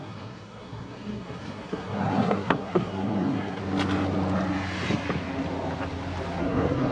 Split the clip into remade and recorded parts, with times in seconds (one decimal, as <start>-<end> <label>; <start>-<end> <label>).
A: 0.0-3.6 remade; 3.6-6.4 recorded; 6.4-6.9 remade